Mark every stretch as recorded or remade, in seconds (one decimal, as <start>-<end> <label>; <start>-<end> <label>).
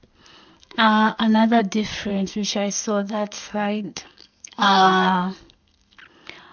0.0-0.5 recorded; 0.5-1.6 remade; 1.6-2.1 recorded; 2.1-6.0 remade; 6.0-6.5 recorded